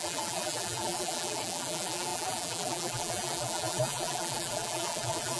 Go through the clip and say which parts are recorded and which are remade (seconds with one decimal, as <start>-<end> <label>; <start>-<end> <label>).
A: 0.0-5.4 remade

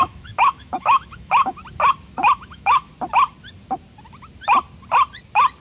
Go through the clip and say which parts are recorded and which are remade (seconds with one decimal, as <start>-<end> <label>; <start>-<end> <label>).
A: 0.0-1.6 remade; 1.6-2.3 recorded; 2.3-2.9 remade; 2.9-5.6 recorded

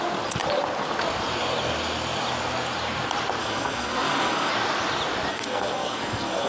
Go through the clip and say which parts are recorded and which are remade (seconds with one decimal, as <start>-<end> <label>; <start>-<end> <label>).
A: 0.0-3.4 recorded; 3.4-4.5 remade; 4.5-5.3 recorded; 5.3-6.5 remade

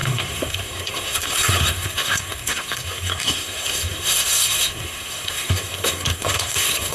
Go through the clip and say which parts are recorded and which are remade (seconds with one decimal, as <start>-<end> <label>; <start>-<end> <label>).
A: 0.0-6.9 remade

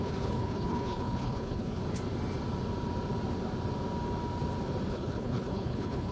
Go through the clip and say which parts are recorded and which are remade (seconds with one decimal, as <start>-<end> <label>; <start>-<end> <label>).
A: 0.0-1.8 remade; 1.8-4.9 recorded; 4.9-6.1 remade

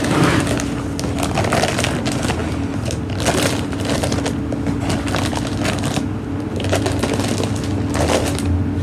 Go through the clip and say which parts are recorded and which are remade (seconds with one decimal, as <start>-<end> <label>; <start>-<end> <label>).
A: 0.0-2.4 recorded; 2.4-4.4 remade; 4.4-5.3 recorded; 5.3-6.8 remade; 6.8-8.8 recorded